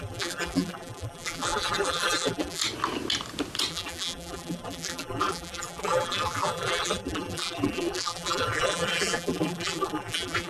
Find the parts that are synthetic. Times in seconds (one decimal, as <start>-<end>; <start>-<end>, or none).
0.0-2.6; 3.7-10.5